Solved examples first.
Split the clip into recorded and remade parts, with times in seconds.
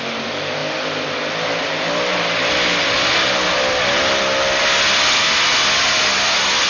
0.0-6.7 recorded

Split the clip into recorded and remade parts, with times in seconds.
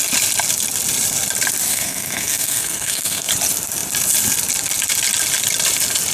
0.0-1.7 recorded; 1.7-3.3 remade; 3.3-6.1 recorded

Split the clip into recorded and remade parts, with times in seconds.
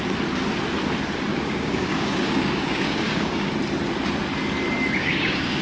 0.0-1.3 recorded; 1.3-3.5 remade; 3.5-5.0 recorded; 5.0-5.6 remade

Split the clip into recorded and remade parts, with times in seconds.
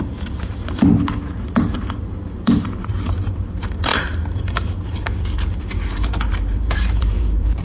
0.0-7.6 remade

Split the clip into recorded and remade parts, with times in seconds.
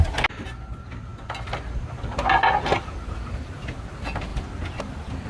0.0-5.3 recorded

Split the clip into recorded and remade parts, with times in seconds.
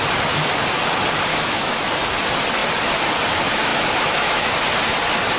0.0-1.3 recorded; 1.3-1.8 remade; 1.8-3.7 recorded; 3.7-4.5 remade; 4.5-5.4 recorded